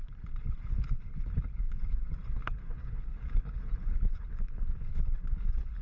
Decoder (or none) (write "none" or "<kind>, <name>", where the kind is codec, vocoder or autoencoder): codec, HILCodec